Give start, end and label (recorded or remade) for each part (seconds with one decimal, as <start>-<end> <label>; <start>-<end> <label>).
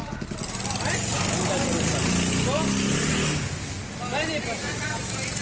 0.0-5.4 recorded